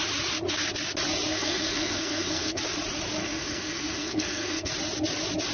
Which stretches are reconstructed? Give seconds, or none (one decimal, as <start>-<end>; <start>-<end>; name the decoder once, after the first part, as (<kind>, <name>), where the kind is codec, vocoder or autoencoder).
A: 1.3-2.6 (codec, SNAC); 3.2-4.7